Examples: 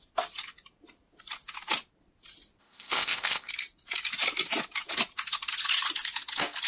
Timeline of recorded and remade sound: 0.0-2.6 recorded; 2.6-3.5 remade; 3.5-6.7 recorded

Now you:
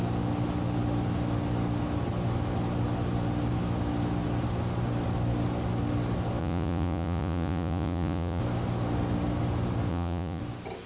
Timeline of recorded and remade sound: 0.0-6.4 recorded; 6.4-8.4 remade; 8.4-9.9 recorded; 9.9-10.4 remade; 10.4-10.9 recorded

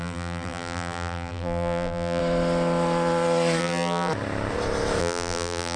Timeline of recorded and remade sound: 0.0-2.2 remade; 2.2-3.6 recorded; 3.6-4.1 remade; 4.1-5.0 recorded; 5.0-5.8 remade

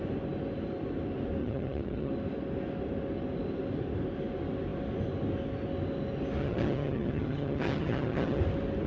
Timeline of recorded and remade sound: 0.0-1.4 recorded; 1.4-2.1 remade; 2.1-6.4 recorded; 6.4-8.4 remade; 8.4-8.9 recorded

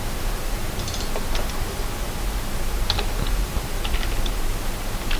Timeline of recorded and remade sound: 0.0-5.2 recorded

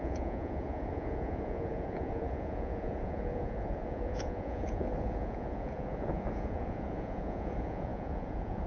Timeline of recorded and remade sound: 0.0-8.7 remade

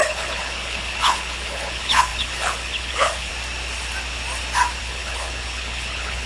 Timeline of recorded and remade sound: 0.0-3.3 remade; 3.3-4.8 recorded; 4.8-6.3 remade

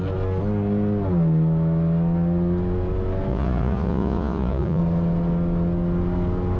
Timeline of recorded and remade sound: 0.0-3.3 recorded; 3.3-4.8 remade; 4.8-6.6 recorded